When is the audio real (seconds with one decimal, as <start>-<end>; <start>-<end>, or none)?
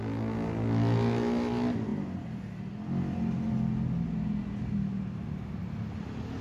0.0-6.4